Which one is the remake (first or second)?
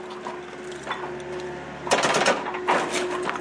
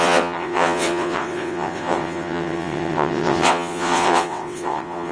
second